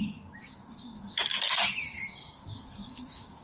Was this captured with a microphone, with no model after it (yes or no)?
no